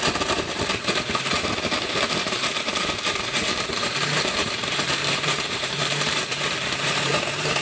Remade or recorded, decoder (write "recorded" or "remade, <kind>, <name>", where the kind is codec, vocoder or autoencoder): remade, vocoder, BigVGAN v2